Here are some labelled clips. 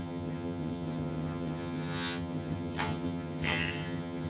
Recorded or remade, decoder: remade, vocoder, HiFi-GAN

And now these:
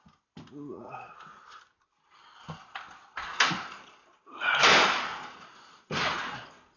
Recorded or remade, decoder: recorded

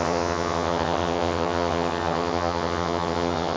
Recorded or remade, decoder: remade, vocoder, HiFi-GAN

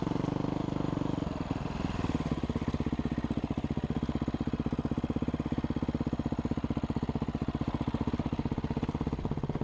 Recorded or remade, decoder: recorded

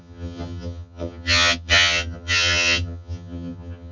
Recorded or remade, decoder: remade, vocoder, HiFi-GAN